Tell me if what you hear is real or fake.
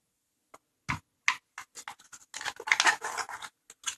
real